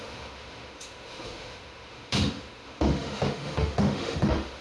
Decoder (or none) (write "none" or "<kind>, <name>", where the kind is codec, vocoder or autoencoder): autoencoder, DAC-VAE